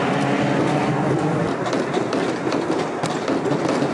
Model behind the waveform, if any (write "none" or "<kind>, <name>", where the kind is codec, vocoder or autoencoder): none